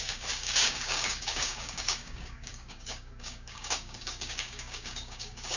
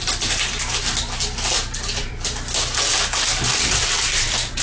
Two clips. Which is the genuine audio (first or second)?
second